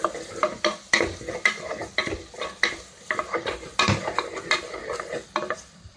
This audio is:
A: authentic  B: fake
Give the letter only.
A